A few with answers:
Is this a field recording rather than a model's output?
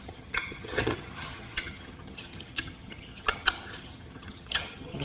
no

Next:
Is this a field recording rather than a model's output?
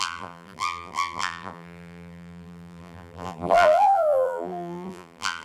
no